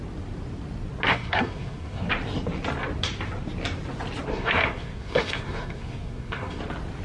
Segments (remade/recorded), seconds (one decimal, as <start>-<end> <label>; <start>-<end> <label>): 0.0-1.1 recorded; 1.1-2.1 remade; 2.1-4.3 recorded; 4.3-6.6 remade; 6.6-7.0 recorded